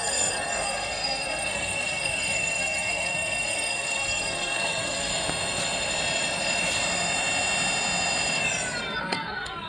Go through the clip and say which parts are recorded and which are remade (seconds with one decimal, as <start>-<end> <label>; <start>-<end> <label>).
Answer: 0.0-5.1 remade; 5.1-9.0 recorded; 9.0-9.7 remade